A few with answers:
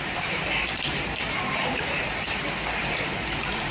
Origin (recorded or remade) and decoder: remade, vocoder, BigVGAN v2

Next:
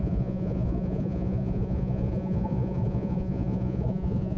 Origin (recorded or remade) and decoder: remade, vocoder, Vocos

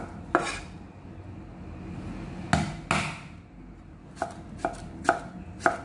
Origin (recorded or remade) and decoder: recorded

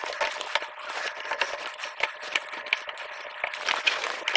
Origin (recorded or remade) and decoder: recorded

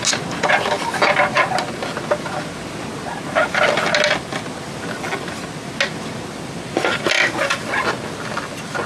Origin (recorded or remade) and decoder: recorded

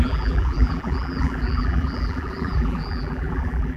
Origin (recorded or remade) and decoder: remade, vocoder, BigVGAN v2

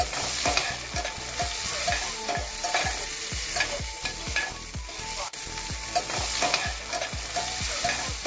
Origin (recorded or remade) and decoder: recorded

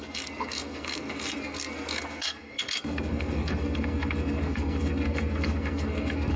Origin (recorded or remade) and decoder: remade, codec, SNAC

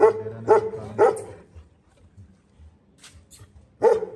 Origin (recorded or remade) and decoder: recorded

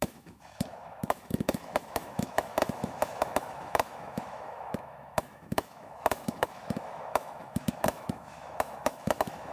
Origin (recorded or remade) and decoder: remade, autoencoder, DAC-VAE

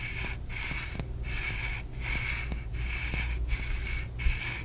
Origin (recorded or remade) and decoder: recorded